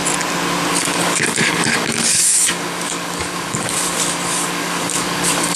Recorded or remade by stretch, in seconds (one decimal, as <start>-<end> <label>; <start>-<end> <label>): 0.0-0.7 recorded; 0.7-5.6 remade